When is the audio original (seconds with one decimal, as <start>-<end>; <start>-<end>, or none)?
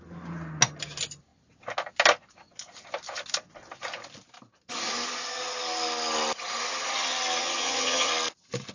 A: 0.0-7.4; 8.1-8.7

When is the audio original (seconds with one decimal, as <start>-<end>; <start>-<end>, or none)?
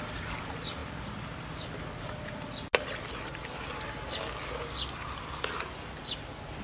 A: 0.0-6.6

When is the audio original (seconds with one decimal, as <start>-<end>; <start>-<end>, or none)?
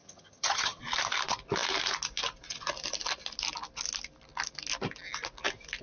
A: 0.8-5.8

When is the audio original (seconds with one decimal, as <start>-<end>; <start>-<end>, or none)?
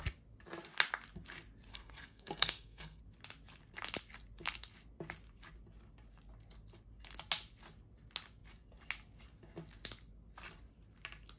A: 0.0-1.7; 3.0-11.4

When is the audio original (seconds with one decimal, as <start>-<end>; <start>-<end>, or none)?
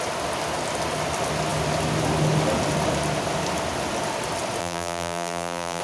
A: 0.0-4.6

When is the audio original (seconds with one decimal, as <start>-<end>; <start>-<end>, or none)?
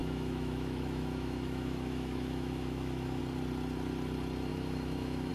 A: 3.2-4.5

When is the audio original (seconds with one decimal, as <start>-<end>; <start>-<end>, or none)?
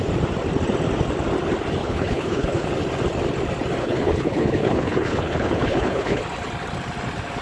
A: 0.0-1.8; 2.7-3.8; 6.2-7.4